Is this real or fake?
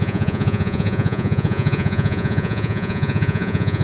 fake